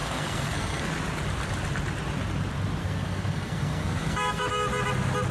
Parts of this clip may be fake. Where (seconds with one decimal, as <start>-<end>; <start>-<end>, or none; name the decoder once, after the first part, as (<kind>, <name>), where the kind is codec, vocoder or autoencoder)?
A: 0.0-0.9 (codec, SNAC); 2.8-4.5